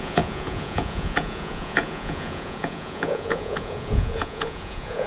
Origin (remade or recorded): remade